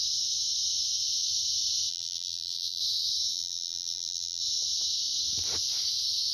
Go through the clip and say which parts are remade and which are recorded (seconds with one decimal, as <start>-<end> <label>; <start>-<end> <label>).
0.0-1.9 recorded; 1.9-2.8 remade; 2.8-3.3 recorded; 3.3-4.4 remade; 4.4-6.3 recorded